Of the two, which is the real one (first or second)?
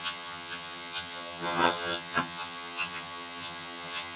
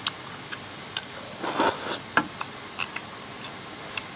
second